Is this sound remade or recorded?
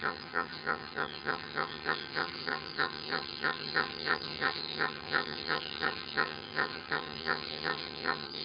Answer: remade